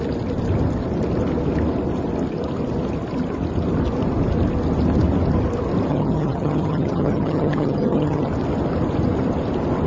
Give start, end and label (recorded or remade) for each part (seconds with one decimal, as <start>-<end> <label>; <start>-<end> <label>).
0.0-5.9 recorded; 5.9-8.3 remade; 8.3-9.9 recorded